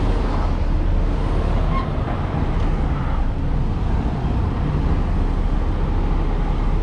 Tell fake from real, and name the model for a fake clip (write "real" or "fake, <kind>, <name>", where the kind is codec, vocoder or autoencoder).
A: real